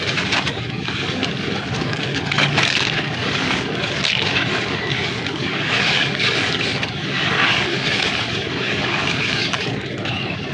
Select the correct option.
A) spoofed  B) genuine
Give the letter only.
A